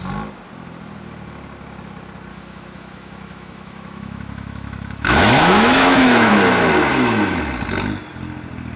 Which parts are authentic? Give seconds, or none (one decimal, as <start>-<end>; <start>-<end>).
0.0-2.3; 6.3-6.9; 7.4-8.8